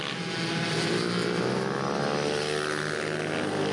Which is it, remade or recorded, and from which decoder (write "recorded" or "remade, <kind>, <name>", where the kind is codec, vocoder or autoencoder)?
recorded